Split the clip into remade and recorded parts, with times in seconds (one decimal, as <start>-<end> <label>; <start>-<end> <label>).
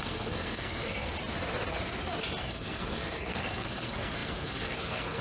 0.0-1.1 remade; 1.1-2.4 recorded; 2.4-5.2 remade